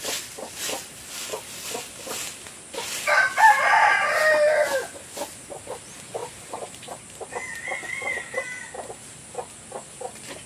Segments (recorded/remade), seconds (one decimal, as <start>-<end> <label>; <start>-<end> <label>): 0.0-6.2 recorded; 6.2-7.3 remade; 7.3-10.5 recorded